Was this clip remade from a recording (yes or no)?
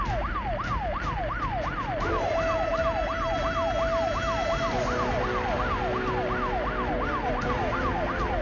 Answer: no